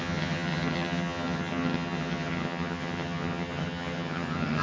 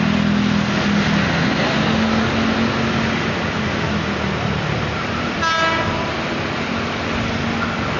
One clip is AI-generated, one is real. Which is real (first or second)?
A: second